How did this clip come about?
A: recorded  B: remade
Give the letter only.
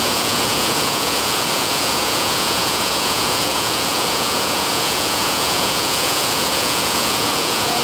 B